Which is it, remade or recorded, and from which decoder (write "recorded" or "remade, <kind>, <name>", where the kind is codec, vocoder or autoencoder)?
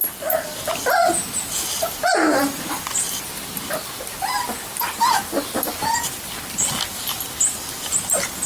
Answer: recorded